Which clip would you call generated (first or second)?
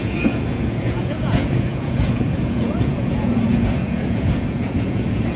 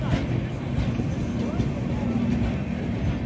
first